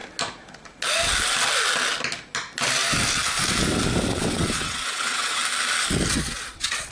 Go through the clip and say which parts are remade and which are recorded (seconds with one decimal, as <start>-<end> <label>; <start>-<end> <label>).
0.0-4.1 recorded; 4.1-5.4 remade; 5.4-6.1 recorded; 6.1-6.9 remade